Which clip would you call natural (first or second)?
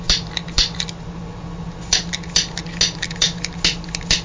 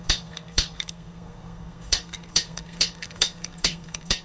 first